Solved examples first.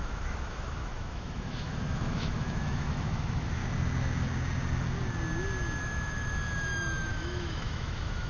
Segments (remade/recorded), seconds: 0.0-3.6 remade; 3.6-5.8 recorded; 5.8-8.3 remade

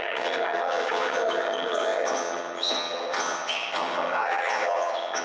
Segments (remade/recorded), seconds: 0.0-5.2 remade

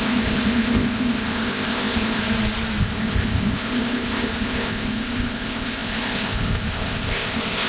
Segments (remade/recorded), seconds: 0.0-2.2 remade; 2.2-2.8 recorded; 2.8-7.7 remade

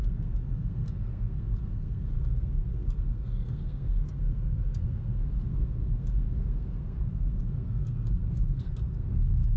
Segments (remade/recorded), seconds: 0.0-9.6 remade

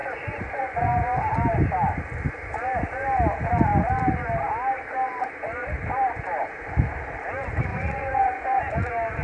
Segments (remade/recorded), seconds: 0.0-0.9 remade; 0.9-7.7 recorded; 7.7-8.6 remade; 8.6-9.2 recorded

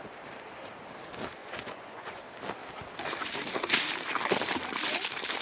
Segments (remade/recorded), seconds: 0.0-1.4 recorded; 1.4-2.2 remade; 2.2-5.4 recorded